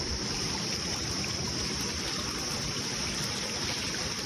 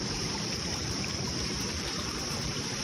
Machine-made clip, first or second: second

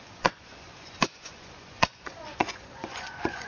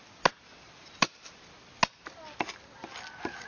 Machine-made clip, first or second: first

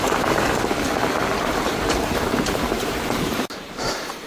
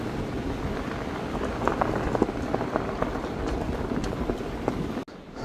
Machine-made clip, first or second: first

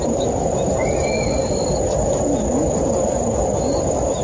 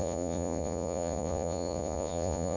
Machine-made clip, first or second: second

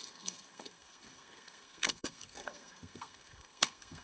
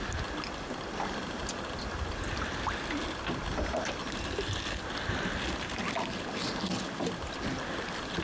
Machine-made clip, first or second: first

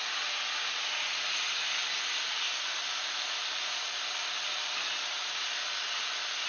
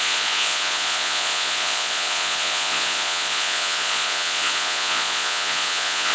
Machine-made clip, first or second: second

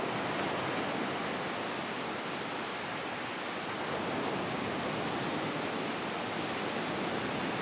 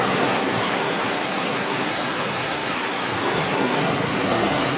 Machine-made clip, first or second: second